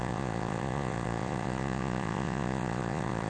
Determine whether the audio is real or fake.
fake